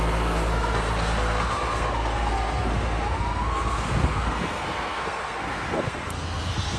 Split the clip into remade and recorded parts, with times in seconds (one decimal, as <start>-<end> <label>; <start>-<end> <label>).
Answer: 0.0-6.8 remade